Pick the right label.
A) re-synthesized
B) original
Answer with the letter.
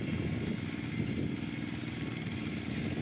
B